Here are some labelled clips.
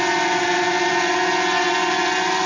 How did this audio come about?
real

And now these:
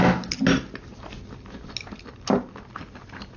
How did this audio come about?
real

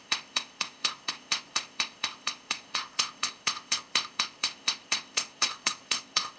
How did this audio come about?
fake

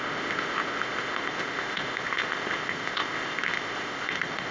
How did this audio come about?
fake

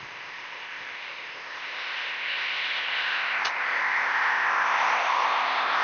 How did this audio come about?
fake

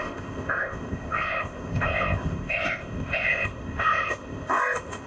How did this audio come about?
fake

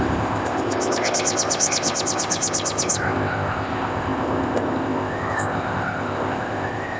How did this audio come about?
fake